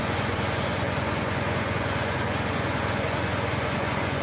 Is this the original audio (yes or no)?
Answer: no